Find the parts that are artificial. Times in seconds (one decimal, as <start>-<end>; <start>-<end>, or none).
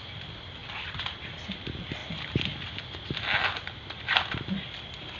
none